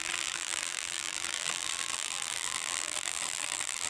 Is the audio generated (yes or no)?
yes